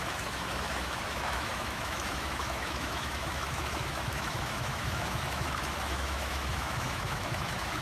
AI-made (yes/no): yes